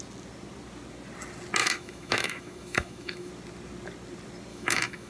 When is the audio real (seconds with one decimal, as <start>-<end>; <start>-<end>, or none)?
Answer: 0.0-1.6; 3.3-4.5